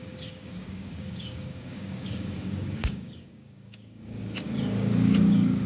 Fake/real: fake